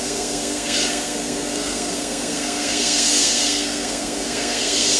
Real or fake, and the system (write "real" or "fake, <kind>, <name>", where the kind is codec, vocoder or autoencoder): fake, codec, SNAC